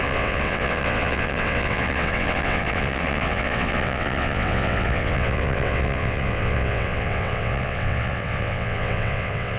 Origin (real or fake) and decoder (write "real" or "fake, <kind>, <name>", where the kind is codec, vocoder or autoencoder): fake, vocoder, WaveNeXt